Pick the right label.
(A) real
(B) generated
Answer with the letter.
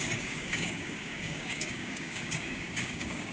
B